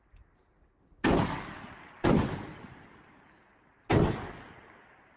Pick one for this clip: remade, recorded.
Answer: recorded